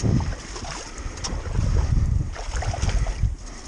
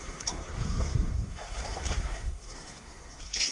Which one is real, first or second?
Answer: first